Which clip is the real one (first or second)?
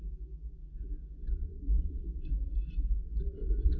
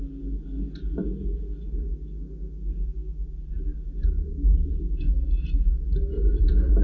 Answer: second